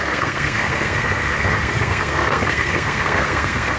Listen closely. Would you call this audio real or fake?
fake